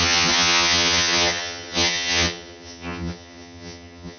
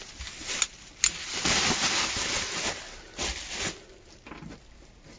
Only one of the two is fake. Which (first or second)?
first